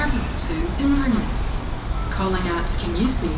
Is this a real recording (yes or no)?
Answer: yes